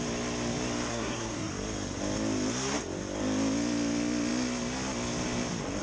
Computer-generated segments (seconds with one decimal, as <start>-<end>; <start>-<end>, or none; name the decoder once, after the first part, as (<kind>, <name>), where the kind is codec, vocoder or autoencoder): 0.9-1.5 (codec, SNAC)